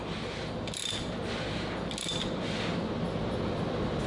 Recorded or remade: recorded